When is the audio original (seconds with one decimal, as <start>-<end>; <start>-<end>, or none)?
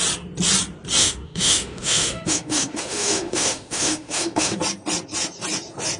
0.0-1.0; 4.6-6.0